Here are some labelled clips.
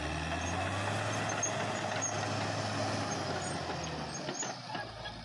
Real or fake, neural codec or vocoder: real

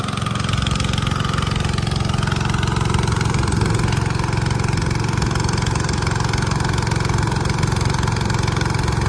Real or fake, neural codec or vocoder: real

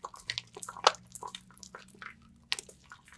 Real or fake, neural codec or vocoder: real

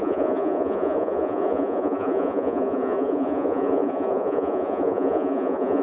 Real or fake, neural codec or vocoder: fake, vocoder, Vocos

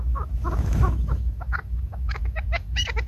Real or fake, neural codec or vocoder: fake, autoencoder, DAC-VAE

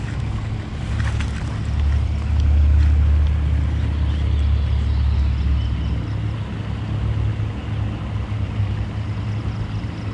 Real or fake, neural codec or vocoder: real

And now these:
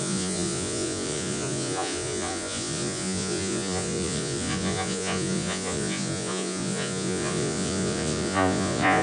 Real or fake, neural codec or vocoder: fake, vocoder, Vocos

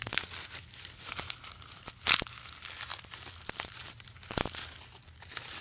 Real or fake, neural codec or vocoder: real